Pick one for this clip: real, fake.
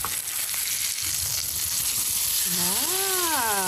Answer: real